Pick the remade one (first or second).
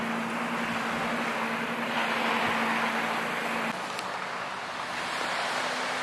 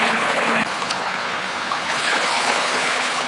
second